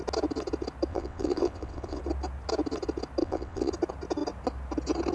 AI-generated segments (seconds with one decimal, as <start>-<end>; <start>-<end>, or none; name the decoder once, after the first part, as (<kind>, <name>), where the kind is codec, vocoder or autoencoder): 0.9-2.0 (vocoder, WaveNeXt); 3.2-3.7

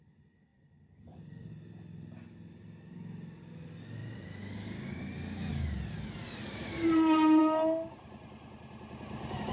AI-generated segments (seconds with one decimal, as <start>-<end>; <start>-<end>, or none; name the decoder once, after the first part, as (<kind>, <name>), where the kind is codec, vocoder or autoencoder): 0.5-1.5 (vocoder, BigVGAN v2)